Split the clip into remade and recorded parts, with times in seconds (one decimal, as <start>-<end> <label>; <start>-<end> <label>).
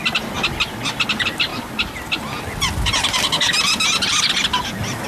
0.0-5.1 recorded